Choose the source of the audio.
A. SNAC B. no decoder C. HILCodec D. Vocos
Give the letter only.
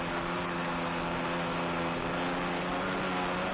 B